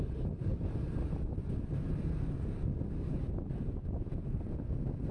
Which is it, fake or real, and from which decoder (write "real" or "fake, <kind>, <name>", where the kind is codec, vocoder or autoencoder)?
real